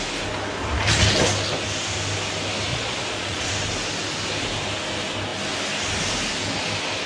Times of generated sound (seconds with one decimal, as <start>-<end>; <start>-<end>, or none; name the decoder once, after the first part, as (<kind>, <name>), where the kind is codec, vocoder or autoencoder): 2.7-3.5 (vocoder, Vocos)